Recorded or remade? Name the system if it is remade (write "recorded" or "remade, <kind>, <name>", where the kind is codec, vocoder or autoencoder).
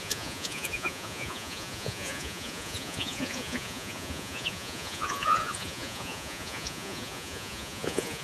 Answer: remade, vocoder, Vocos